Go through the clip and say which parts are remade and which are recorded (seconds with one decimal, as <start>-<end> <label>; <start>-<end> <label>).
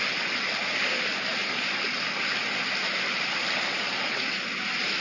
0.0-5.0 recorded